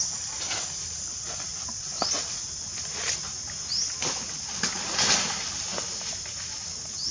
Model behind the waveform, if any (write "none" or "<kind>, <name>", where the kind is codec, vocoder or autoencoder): none